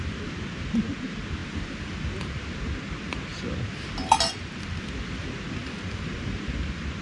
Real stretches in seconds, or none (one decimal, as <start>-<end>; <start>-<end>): 0.0-1.4; 2.0-5.6; 6.1-7.0